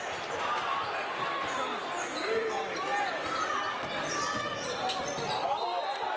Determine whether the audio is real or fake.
real